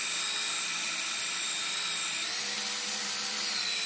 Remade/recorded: remade